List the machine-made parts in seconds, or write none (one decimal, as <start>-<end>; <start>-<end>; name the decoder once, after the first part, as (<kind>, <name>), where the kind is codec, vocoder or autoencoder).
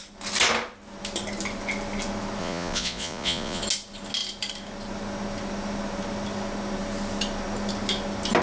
2.4-3.6 (vocoder, Vocos)